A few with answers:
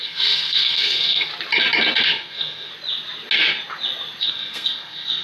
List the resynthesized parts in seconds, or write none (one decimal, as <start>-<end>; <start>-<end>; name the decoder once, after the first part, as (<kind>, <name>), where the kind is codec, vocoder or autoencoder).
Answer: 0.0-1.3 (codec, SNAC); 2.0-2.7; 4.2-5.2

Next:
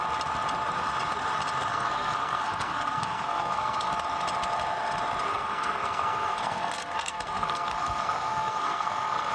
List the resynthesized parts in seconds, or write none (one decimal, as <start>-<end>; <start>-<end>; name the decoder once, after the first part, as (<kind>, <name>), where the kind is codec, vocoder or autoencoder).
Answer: 1.7-3.9 (codec, SNAC); 5.3-9.3

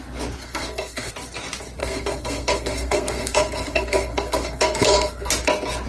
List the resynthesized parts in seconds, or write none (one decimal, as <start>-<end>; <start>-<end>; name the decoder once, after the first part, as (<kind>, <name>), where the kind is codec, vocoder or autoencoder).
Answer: 0.4-1.1 (codec, SNAC); 1.8-5.3

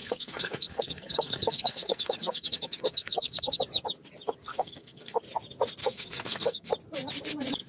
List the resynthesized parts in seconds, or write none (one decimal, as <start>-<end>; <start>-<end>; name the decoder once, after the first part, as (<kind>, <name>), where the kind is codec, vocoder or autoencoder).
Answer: 0.0-3.6 (codec, SNAC); 4.4-5.2; 5.8-6.7

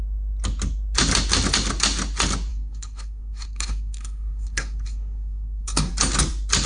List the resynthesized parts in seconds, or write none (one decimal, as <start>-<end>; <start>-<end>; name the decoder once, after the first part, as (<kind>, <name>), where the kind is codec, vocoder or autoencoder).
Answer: 2.5-5.9 (codec, SNAC)